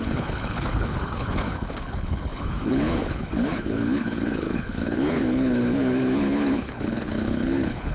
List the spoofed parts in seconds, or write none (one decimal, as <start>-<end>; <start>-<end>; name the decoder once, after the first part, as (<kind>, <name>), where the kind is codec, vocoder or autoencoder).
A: 0.0-7.9 (codec, HILCodec)